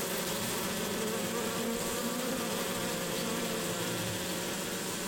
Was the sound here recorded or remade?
remade